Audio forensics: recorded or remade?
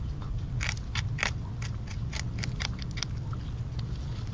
recorded